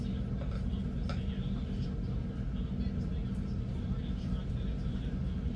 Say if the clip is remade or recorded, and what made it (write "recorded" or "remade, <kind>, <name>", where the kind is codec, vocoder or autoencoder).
recorded